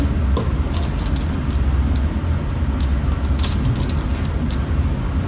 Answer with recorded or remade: recorded